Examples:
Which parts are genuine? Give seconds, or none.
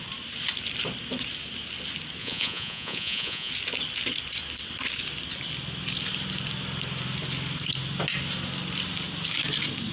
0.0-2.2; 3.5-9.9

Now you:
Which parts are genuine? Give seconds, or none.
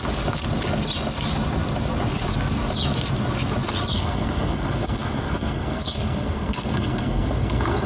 0.0-3.9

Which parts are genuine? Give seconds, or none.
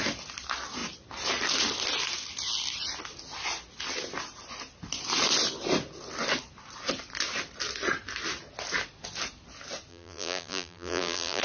0.0-9.9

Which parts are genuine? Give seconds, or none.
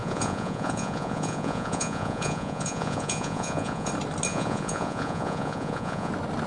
3.9-4.3; 6.1-6.5